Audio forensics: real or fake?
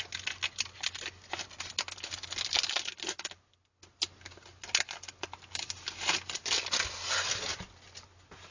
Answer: real